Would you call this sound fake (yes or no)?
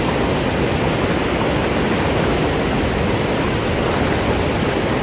no